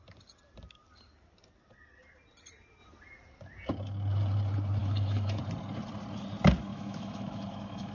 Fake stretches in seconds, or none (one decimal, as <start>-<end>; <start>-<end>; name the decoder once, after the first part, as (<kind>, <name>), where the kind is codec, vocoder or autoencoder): 4.8-5.4 (autoencoder, DAC-VAE); 6.7-7.9